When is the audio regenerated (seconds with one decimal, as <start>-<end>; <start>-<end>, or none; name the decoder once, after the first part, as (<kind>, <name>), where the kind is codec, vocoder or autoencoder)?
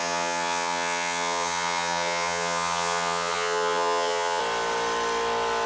0.0-4.4 (vocoder, HiFi-GAN)